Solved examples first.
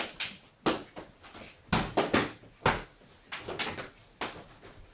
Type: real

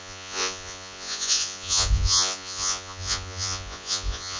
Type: fake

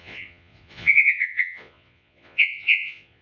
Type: fake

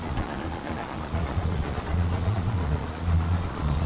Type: fake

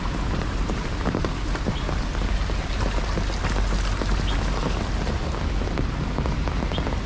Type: real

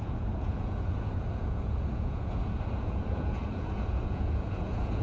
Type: fake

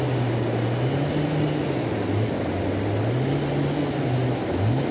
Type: real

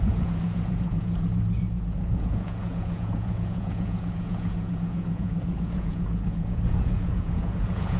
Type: fake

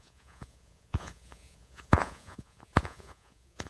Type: fake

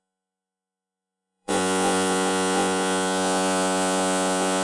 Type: fake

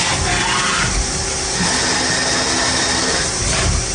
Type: real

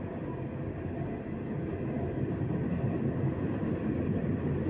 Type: real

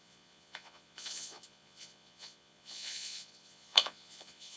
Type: fake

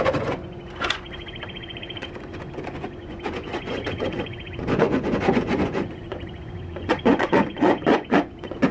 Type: fake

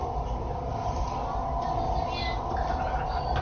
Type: real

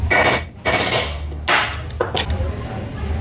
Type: real